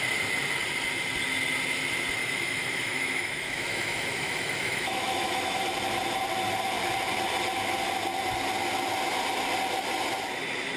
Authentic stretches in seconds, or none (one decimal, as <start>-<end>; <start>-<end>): 0.0-2.2; 5.6-10.8